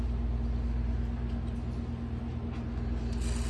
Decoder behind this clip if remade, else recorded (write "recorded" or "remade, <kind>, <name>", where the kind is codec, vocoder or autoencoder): recorded